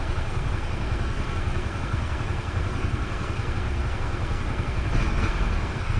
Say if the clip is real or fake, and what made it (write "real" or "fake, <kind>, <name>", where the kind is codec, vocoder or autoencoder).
fake, codec, SNAC